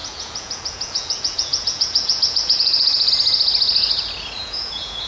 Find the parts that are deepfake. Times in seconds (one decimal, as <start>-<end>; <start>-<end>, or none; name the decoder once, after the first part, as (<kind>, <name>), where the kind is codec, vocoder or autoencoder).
0.0-3.1 (vocoder, Vocos); 4.4-5.1